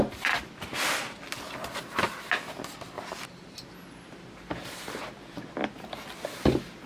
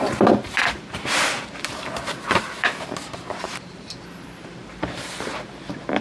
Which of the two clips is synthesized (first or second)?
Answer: second